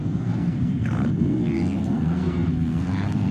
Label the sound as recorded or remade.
remade